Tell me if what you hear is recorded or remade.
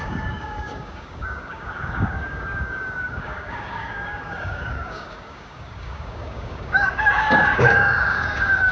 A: remade